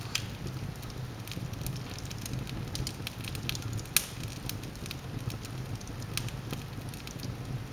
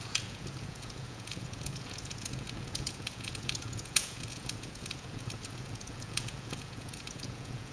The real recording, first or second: first